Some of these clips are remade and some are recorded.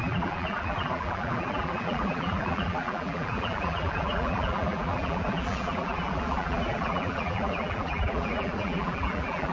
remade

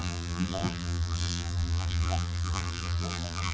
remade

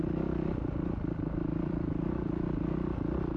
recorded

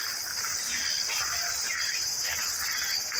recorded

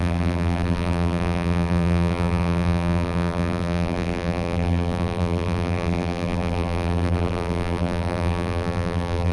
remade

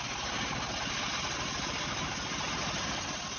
recorded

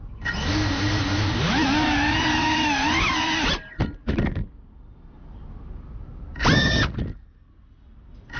recorded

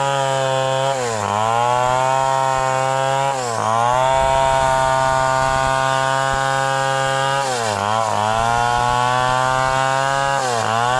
recorded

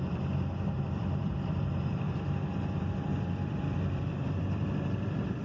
remade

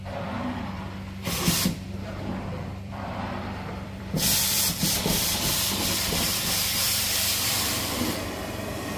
remade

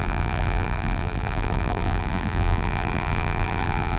remade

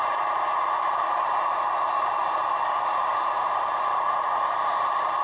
remade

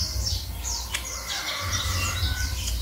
remade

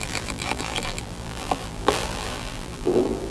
remade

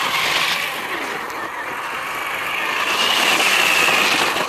recorded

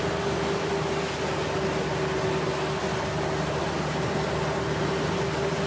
recorded